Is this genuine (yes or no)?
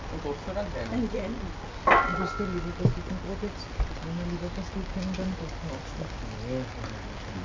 yes